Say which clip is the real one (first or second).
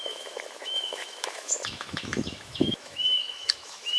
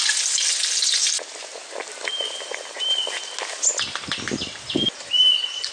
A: second